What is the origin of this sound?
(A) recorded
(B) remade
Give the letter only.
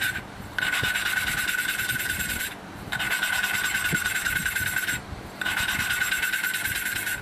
B